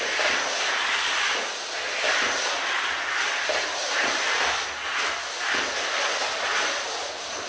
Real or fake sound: real